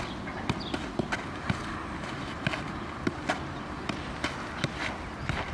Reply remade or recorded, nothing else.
remade